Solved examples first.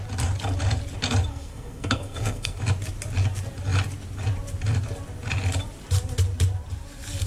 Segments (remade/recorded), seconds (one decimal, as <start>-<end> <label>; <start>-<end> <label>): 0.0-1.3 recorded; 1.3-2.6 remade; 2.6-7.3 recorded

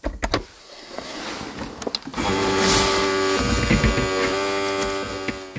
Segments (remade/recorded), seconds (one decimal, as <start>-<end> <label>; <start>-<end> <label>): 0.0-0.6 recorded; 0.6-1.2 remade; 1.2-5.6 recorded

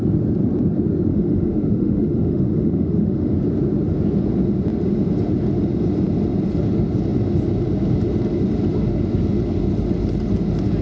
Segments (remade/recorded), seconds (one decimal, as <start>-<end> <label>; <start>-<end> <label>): 0.0-1.1 recorded; 1.1-3.3 remade; 3.3-10.8 recorded